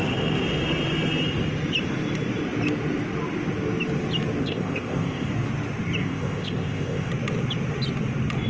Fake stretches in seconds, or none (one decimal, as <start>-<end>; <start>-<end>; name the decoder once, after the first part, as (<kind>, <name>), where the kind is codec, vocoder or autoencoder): 4.4-5.3 (codec, ZipCodec); 6.0-7.1